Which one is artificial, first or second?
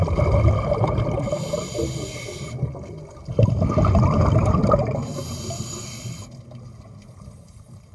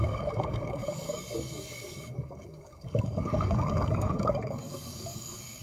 second